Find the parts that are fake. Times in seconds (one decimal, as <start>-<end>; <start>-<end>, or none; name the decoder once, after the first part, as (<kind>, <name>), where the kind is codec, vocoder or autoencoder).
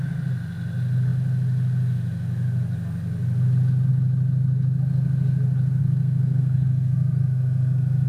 5.8-8.1 (codec, SNAC)